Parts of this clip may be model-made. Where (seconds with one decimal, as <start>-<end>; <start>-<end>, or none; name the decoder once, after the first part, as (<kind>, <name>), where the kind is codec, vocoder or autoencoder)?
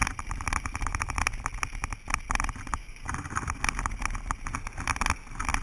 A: 0.0-1.2 (vocoder, BigVGAN v2); 2.8-3.6